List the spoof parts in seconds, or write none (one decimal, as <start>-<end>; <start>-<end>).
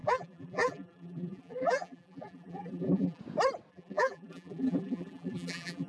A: 0.0-3.2; 3.7-5.9